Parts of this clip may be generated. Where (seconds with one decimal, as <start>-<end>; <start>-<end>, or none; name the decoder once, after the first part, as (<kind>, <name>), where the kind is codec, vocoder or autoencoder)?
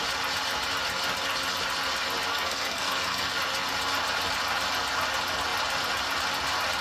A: 2.3-3.3 (codec, SNAC)